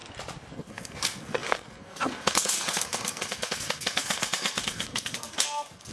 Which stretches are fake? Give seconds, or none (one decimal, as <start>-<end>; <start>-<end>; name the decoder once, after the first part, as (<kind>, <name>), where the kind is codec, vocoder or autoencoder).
0.5-5.9 (codec, SNAC)